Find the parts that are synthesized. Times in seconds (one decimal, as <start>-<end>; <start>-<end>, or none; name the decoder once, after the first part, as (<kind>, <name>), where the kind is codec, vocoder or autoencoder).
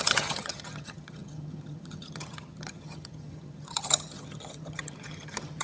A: 0.0-5.6 (vocoder, HiFi-GAN)